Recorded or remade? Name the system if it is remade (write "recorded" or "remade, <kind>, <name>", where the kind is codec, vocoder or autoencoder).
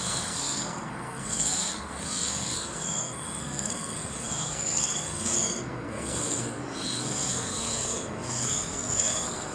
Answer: remade, codec, SNAC